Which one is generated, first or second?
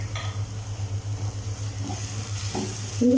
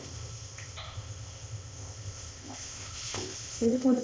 second